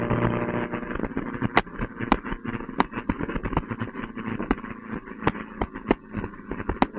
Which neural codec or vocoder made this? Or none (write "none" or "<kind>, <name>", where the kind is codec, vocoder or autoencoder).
none